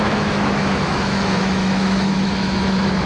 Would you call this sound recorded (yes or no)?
no